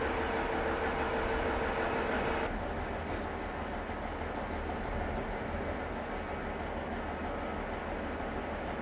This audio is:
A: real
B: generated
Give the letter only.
A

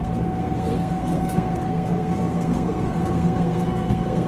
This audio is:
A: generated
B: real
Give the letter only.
A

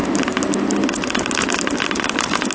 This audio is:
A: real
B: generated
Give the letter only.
A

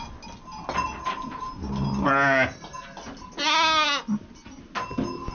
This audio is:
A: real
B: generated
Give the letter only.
A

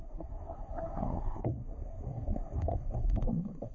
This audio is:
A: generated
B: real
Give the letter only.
A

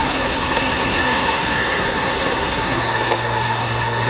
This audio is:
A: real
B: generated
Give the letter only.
B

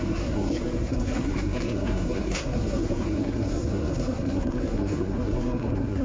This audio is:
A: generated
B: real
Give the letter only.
A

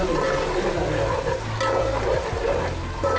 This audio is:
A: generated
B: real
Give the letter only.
B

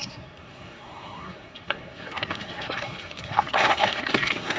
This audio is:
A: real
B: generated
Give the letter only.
B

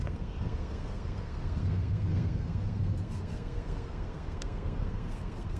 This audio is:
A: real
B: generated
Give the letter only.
B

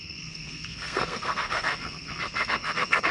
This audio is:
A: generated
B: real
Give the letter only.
A